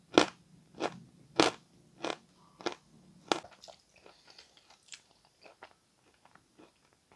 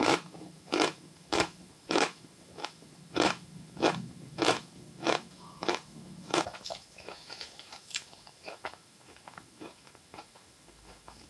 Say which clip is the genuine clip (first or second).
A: first